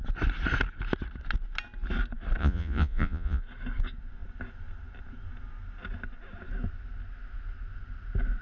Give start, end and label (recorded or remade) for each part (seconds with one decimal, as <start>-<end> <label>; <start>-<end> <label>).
0.0-2.4 recorded; 2.4-3.4 remade; 3.4-8.4 recorded